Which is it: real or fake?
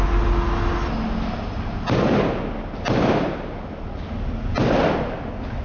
real